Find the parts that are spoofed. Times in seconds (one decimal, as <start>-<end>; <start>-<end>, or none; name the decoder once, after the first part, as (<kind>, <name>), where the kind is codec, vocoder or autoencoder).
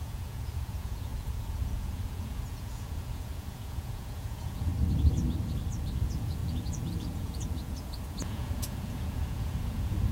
0.0-4.7 (vocoder, Vocos); 6.0-10.1